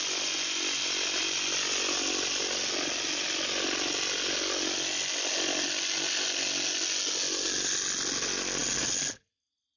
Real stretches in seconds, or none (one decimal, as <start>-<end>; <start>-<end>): 0.0-9.8